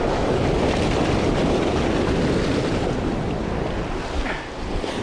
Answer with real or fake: real